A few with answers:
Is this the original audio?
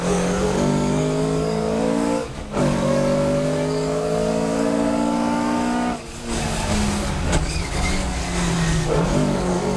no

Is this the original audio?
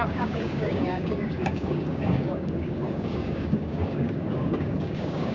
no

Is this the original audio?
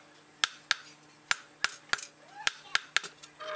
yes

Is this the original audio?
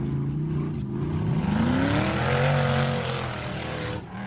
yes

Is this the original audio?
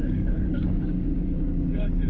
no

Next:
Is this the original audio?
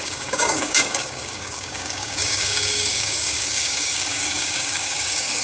no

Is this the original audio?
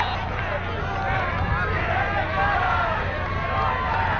yes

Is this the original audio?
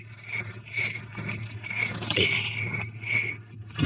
yes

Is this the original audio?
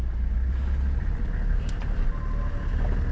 yes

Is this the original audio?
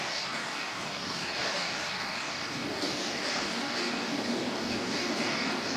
no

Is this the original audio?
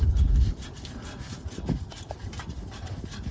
yes